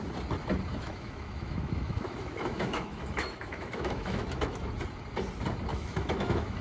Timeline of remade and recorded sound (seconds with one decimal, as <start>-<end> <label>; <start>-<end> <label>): 0.0-0.7 recorded; 0.7-4.7 remade; 4.7-5.7 recorded; 5.7-6.6 remade